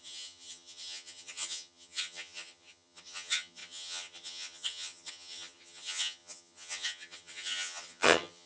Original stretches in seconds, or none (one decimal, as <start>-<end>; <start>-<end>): none